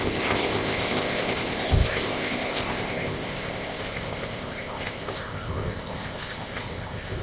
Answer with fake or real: fake